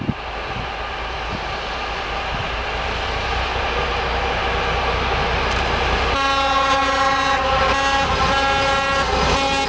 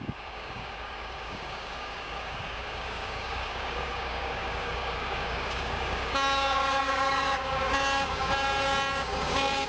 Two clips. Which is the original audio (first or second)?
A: first